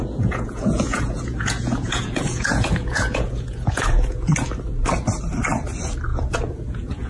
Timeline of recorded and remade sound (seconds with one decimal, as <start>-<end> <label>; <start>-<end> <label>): 0.0-4.3 remade; 4.3-6.1 recorded; 6.1-7.1 remade